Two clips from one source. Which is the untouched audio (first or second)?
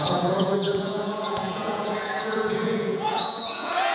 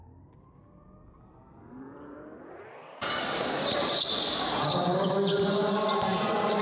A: second